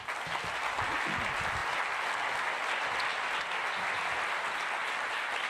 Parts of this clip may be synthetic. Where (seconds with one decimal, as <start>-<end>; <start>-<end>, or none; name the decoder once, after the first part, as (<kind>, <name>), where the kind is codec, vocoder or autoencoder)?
none